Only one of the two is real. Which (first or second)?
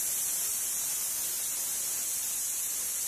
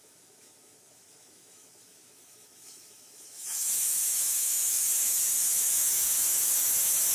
first